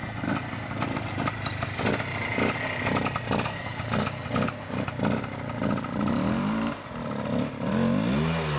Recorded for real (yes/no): yes